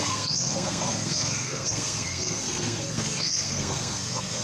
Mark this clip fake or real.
fake